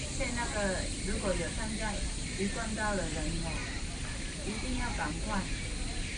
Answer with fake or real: real